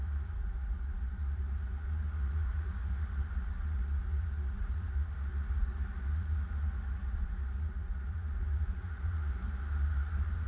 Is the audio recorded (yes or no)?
no